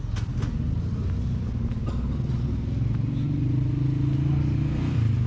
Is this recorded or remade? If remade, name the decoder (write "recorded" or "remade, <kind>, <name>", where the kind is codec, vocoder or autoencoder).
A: recorded